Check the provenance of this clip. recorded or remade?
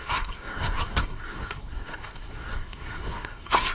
remade